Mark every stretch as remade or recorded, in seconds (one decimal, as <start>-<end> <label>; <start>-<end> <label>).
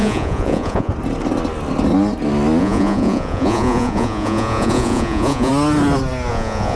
0.0-0.9 remade; 0.9-2.6 recorded; 2.6-5.5 remade; 5.5-6.3 recorded; 6.3-6.8 remade